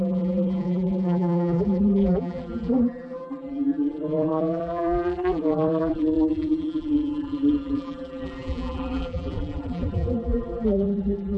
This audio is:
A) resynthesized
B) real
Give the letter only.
A